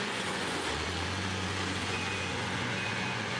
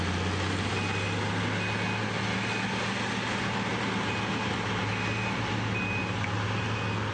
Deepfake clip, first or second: first